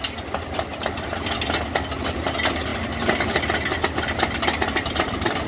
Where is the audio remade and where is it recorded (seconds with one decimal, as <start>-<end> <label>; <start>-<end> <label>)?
0.0-5.5 recorded